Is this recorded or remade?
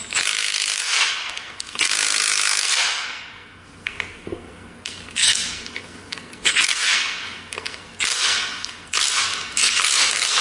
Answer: remade